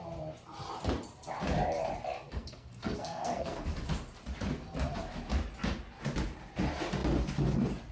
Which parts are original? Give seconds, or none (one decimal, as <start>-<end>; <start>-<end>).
0.0-2.3; 3.7-7.9